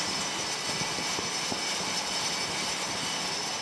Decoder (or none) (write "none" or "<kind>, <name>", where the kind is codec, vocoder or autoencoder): none